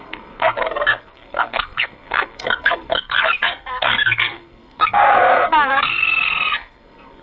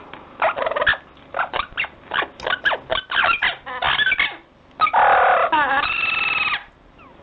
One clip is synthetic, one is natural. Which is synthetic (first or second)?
first